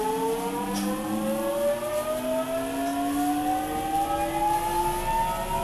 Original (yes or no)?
yes